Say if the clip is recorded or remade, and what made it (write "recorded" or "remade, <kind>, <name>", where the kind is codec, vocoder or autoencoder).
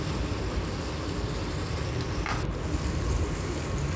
recorded